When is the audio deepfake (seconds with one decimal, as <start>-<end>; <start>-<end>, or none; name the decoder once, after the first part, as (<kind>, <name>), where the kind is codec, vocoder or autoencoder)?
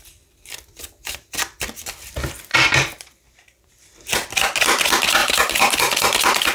2.5-3.4 (vocoder, BigVGAN v2); 5.2-5.8